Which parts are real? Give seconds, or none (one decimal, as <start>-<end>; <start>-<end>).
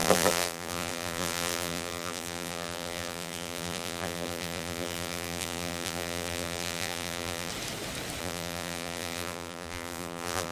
7.5-8.2